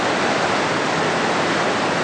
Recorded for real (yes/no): yes